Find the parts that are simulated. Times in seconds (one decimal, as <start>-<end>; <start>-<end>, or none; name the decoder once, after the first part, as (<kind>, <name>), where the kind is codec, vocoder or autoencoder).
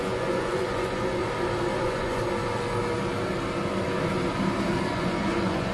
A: 0.0-1.2 (vocoder, Vocos); 1.8-2.2; 4.9-5.7